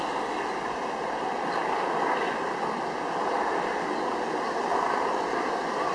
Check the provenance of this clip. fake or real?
real